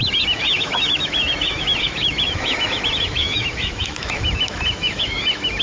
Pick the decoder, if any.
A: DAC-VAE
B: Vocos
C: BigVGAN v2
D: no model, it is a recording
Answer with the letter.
A